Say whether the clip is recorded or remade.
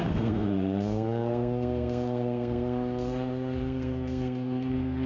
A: remade